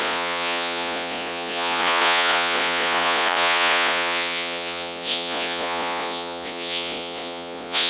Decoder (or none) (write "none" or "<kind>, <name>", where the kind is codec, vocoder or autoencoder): vocoder, Vocos